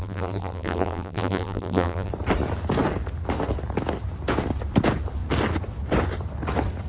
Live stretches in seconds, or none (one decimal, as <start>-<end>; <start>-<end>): 2.1-6.9